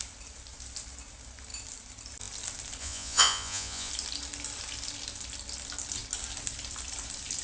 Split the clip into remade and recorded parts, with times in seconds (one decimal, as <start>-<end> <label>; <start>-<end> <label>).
0.0-2.8 recorded; 2.8-3.9 remade; 3.9-7.4 recorded